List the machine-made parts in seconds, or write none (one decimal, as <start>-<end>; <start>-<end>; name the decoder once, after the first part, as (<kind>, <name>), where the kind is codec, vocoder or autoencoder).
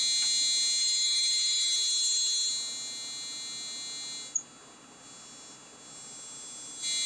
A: 0.8-2.5 (autoencoder, DAC-VAE)